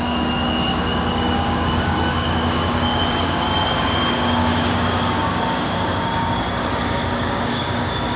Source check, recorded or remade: remade